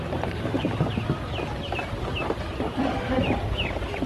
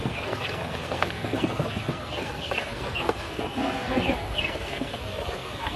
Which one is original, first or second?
first